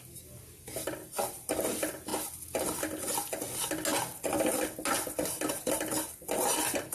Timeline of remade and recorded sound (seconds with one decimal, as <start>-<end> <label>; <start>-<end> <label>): 0.0-6.9 recorded